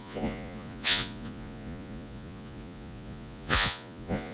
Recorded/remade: remade